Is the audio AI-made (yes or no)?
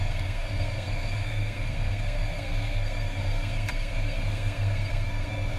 yes